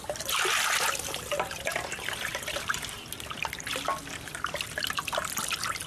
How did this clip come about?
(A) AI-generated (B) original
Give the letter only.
B